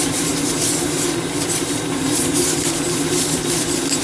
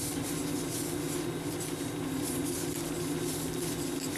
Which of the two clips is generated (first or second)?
first